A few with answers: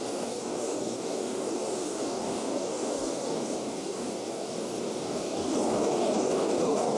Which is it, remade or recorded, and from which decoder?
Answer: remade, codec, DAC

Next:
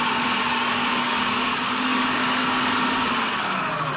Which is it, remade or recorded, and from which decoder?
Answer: remade, codec, DAC